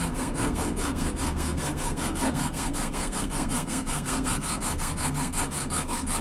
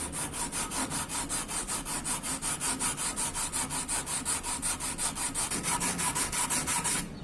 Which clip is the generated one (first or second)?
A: first